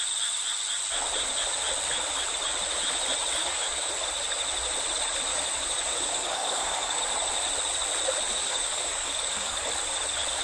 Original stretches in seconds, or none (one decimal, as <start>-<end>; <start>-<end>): 0.0-3.4; 3.9-5.3; 7.0-8.4; 9.7-10.4